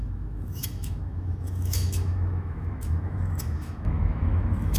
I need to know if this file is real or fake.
fake